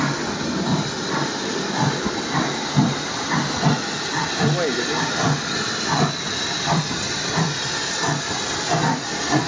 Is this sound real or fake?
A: real